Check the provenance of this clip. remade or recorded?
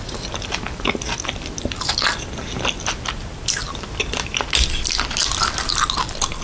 recorded